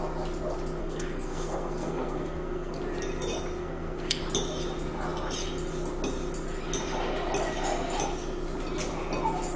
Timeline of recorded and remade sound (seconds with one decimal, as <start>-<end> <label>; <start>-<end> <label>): 0.0-0.8 recorded; 0.8-2.8 remade; 2.8-3.6 recorded; 3.6-4.2 remade; 4.2-9.6 recorded